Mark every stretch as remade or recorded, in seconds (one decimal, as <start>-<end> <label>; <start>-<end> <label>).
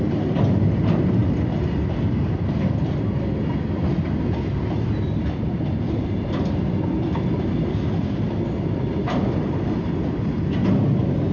0.0-11.3 recorded